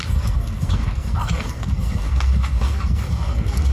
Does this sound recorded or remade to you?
remade